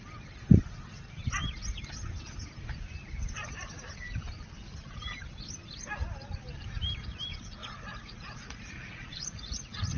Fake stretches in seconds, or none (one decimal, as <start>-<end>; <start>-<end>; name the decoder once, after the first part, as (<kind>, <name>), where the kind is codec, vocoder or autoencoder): 7.6-10.0 (vocoder, Vocos)